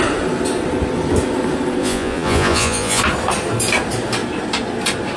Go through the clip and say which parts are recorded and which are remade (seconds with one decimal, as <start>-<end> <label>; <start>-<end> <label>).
0.0-1.8 recorded; 1.8-3.0 remade; 3.0-5.2 recorded